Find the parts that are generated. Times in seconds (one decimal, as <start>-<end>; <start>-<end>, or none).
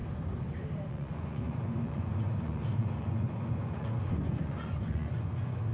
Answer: 0.9-5.7